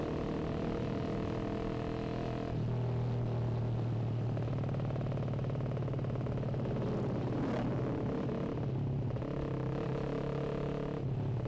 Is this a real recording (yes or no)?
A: yes